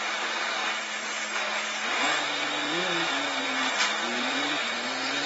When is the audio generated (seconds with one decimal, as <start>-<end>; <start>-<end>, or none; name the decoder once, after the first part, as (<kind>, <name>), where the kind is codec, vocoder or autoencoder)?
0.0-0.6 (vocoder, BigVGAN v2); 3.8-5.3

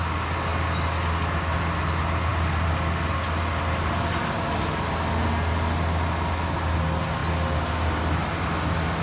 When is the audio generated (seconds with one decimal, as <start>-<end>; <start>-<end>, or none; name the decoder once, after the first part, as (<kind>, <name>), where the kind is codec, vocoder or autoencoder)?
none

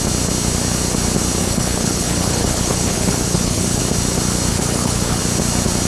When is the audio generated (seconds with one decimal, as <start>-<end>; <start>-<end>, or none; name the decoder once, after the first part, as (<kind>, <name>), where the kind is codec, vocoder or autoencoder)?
1.4-3.8 (codec, HILCodec); 4.5-5.2